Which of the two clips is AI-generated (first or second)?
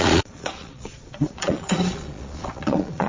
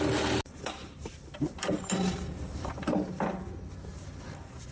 first